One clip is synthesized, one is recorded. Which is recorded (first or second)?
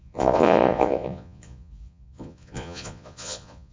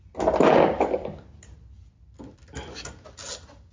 second